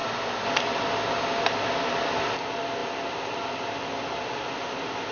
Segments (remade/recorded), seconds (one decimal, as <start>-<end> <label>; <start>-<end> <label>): 0.0-5.1 recorded

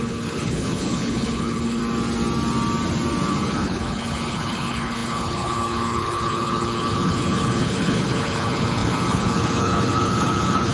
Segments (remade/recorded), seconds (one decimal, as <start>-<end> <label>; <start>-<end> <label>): 0.0-1.8 remade; 1.8-3.3 recorded; 3.3-10.7 remade

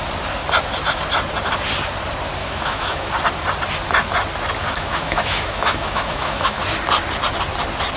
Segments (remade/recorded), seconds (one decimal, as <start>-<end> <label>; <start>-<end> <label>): 0.0-2.4 recorded; 2.4-3.1 remade; 3.1-4.6 recorded; 4.6-6.6 remade; 6.6-8.0 recorded

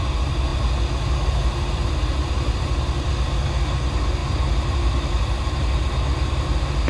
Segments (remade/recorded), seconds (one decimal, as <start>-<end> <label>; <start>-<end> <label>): 0.0-6.9 recorded

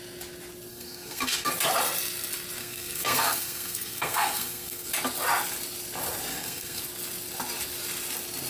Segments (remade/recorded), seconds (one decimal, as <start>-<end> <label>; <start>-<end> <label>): 0.0-0.7 recorded; 0.7-1.5 remade; 1.5-2.6 recorded; 2.6-4.9 remade; 4.9-6.3 recorded; 6.3-6.8 remade; 6.8-8.5 recorded

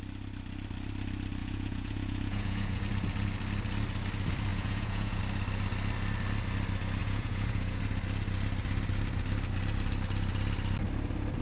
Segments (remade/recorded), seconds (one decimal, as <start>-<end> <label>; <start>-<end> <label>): 0.0-1.4 recorded; 1.4-2.8 remade; 2.8-4.5 recorded; 4.5-5.2 remade; 5.2-7.0 recorded; 7.0-7.8 remade; 7.8-11.4 recorded

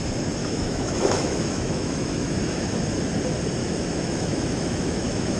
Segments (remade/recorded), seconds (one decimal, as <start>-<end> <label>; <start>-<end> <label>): 0.0-0.4 recorded; 0.4-2.4 remade; 2.4-3.6 recorded; 3.6-5.4 remade